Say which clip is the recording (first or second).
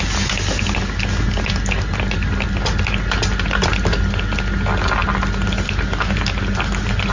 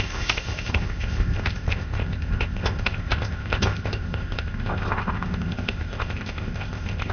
first